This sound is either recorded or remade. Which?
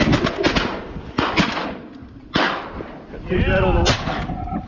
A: recorded